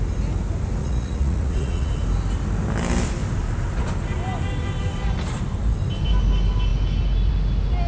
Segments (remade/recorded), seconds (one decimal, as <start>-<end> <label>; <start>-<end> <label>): 0.0-0.8 recorded; 0.8-1.9 remade; 1.9-7.9 recorded